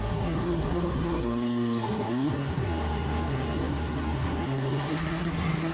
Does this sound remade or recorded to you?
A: remade